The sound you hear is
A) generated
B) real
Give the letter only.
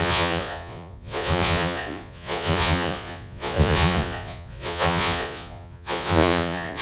A